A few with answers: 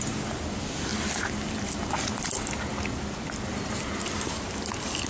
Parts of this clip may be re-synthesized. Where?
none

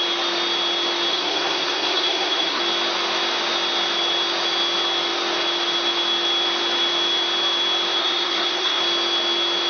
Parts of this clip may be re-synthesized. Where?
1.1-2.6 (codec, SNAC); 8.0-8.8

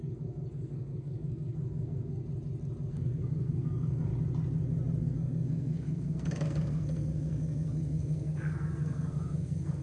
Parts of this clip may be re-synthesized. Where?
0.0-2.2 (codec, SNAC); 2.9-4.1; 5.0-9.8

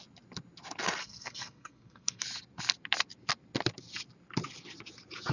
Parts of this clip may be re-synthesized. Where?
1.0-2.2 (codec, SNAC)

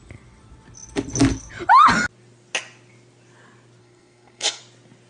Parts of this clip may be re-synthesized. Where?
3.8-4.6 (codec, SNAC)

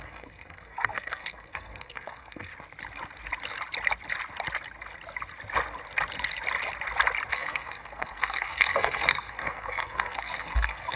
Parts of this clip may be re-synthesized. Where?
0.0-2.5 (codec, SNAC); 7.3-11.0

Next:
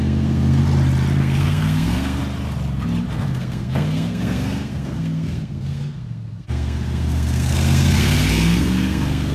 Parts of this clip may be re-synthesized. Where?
0.0-0.6 (codec, SNAC); 1.2-2.2; 3.1-9.3